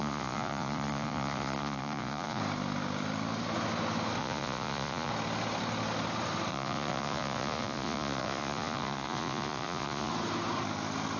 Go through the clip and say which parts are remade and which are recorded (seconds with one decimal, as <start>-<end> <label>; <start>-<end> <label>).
0.0-2.4 remade; 2.4-4.2 recorded; 4.2-5.1 remade; 5.1-6.5 recorded; 6.5-10.1 remade; 10.1-11.2 recorded